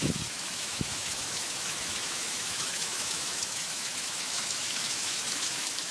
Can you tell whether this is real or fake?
fake